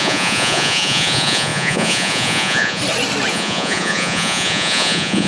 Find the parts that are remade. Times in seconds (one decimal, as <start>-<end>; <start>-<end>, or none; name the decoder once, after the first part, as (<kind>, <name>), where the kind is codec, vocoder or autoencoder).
0.0-2.8 (vocoder, Vocos); 3.3-5.3